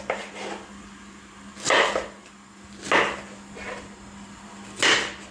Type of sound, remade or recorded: recorded